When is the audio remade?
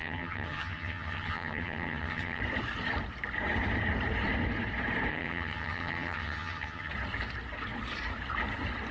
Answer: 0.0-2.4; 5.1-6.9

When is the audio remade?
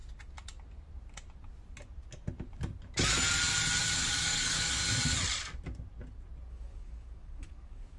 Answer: 3.8-4.8; 6.5-8.0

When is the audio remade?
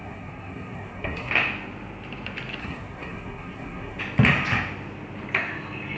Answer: 0.0-1.3; 2.6-4.0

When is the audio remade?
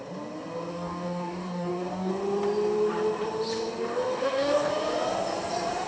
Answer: 0.7-2.1; 3.9-4.7